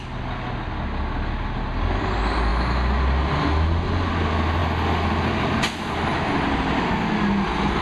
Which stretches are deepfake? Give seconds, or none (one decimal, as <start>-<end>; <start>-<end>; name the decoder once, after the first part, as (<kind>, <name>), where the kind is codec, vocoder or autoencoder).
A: none